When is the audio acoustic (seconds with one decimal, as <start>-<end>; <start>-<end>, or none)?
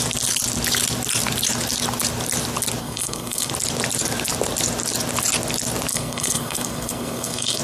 0.0-2.8; 3.5-5.9